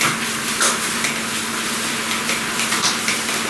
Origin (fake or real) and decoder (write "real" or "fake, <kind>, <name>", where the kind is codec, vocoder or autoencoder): real